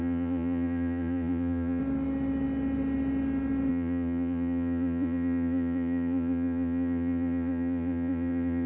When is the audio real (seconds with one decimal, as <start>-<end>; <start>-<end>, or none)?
1.8-3.7